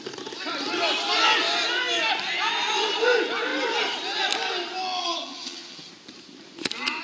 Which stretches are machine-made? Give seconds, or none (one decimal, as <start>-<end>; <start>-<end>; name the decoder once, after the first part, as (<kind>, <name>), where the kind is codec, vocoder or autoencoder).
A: 5.0-5.9 (vocoder, HiFi-GAN)